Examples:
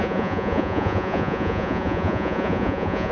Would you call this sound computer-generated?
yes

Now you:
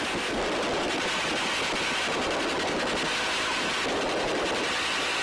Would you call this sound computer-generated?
no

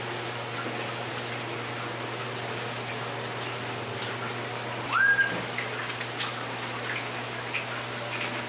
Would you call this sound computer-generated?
no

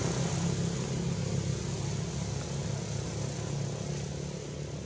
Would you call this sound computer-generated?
no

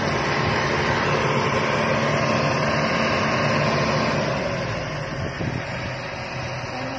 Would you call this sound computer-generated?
no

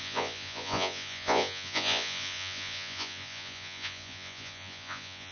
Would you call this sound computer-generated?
yes